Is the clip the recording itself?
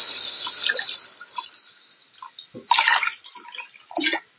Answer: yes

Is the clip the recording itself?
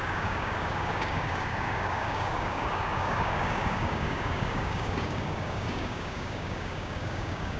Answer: no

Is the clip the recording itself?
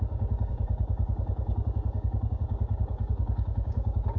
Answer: no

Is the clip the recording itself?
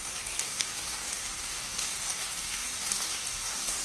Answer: no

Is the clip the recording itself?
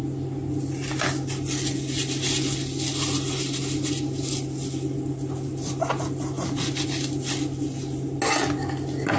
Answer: yes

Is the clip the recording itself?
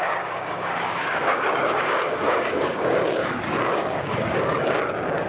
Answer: no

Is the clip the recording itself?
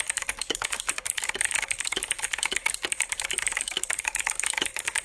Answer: no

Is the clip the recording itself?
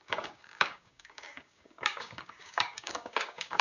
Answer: no